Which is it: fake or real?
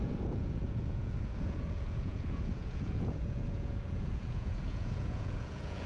fake